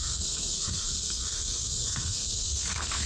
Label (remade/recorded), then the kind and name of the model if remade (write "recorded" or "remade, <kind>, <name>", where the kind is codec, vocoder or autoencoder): remade, codec, SNAC